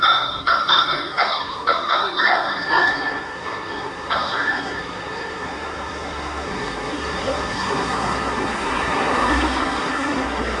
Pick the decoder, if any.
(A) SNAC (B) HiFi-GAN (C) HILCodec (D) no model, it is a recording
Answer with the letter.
A